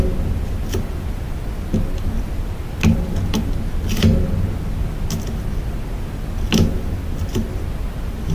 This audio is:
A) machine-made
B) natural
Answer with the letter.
B